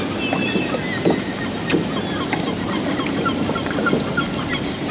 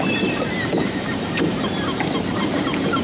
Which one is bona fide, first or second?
first